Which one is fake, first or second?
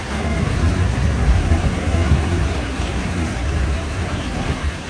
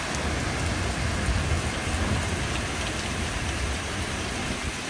first